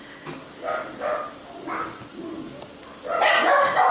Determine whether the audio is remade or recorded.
recorded